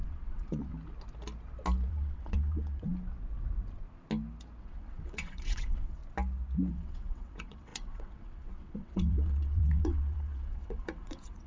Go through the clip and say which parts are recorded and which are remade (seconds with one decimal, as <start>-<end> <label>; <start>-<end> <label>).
0.0-0.7 remade; 0.7-1.9 recorded; 1.9-2.9 remade; 2.9-4.6 recorded; 4.6-6.0 remade; 6.0-6.7 recorded; 6.7-11.5 remade